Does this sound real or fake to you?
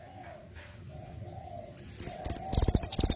real